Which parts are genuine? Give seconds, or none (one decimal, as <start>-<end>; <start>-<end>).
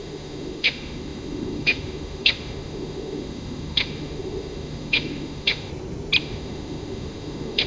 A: 5.7-6.2